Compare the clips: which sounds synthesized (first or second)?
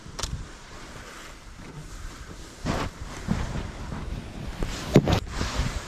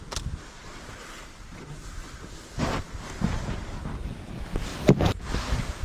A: first